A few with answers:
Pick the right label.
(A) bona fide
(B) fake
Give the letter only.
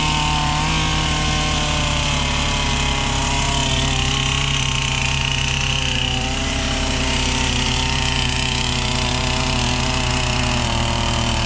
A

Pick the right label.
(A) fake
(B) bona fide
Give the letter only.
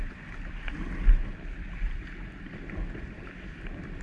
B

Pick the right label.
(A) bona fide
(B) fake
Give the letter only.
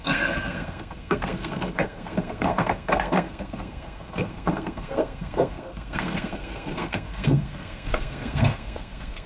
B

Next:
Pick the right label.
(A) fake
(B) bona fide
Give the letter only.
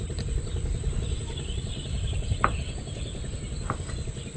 A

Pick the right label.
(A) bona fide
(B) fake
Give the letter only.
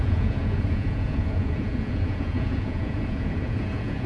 B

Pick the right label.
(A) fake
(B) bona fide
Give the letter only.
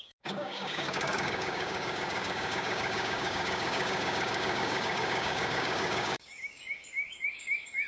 A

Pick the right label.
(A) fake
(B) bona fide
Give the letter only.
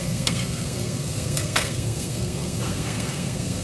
A